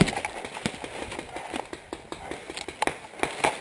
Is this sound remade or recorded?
recorded